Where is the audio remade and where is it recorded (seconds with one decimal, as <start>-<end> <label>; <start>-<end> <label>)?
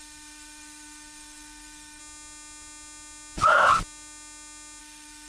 0.0-2.0 remade; 2.0-4.8 recorded; 4.8-5.3 remade